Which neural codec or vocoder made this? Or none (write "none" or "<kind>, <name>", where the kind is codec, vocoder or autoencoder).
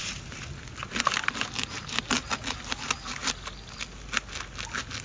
none